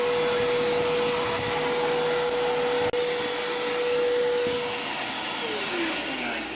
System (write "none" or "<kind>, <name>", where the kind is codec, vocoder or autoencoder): none